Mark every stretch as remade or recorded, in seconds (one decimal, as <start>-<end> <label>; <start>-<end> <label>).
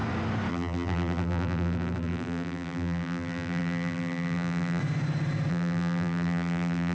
0.0-0.5 recorded; 0.5-4.8 remade; 4.8-5.5 recorded; 5.5-6.9 remade